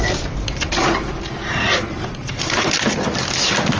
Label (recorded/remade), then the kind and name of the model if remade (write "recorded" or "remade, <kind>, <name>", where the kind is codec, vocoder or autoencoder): recorded